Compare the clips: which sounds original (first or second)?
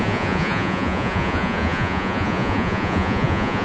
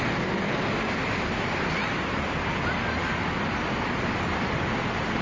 second